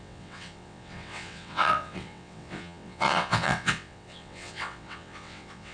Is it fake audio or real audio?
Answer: fake